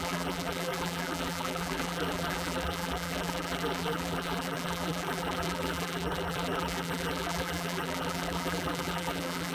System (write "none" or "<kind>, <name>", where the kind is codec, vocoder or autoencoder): vocoder, BigVGAN v2